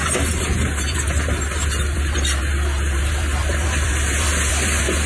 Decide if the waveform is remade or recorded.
recorded